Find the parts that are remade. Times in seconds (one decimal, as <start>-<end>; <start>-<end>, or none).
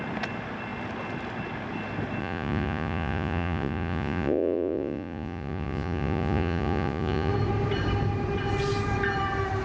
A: 2.2-7.3